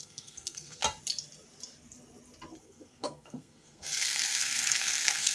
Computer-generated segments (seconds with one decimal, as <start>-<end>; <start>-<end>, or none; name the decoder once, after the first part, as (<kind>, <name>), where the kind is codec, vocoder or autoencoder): 0.0-0.8 (codec, SNAC); 2.6-5.3